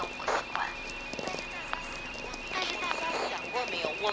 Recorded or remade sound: recorded